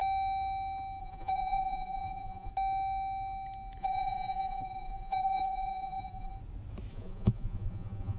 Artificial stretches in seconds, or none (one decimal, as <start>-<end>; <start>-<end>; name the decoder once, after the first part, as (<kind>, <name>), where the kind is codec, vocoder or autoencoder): 1.0-2.5 (vocoder, Vocos); 3.8-6.3; 6.9-8.2